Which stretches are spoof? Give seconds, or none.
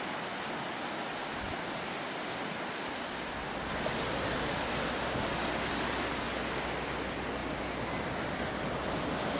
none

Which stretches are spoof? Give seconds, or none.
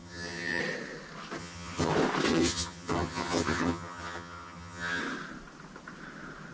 0.0-0.6 (vocoder, HiFi-GAN); 1.4-1.9; 2.3-5.0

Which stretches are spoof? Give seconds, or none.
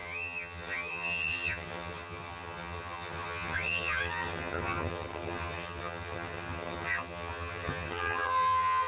0.0-8.9 (vocoder, HiFi-GAN)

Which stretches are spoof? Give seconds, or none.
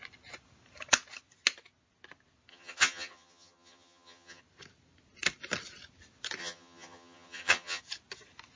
2.5-4.4 (vocoder, HiFi-GAN); 6.4-7.8